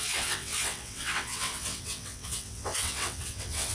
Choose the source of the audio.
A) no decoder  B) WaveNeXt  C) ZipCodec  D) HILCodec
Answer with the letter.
B